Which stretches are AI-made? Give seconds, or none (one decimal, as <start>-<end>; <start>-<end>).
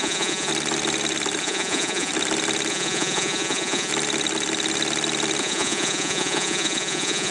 0.0-0.5; 1.4-2.1; 2.7-3.9; 5.4-7.3